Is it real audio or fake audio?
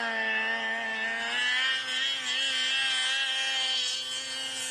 real